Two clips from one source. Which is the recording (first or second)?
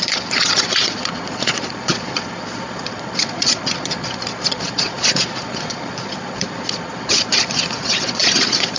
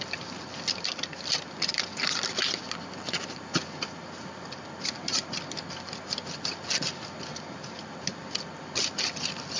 second